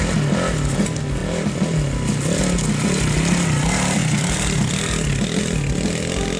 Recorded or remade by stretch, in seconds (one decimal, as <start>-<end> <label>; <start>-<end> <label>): 0.0-6.4 recorded